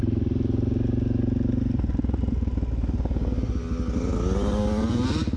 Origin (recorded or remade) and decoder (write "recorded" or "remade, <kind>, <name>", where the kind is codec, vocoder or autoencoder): recorded